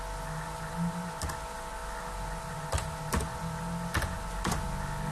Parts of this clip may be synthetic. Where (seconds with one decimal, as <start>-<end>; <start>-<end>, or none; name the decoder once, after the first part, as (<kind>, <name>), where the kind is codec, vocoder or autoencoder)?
none